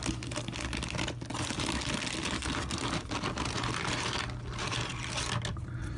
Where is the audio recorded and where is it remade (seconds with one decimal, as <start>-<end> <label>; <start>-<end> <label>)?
0.0-6.0 recorded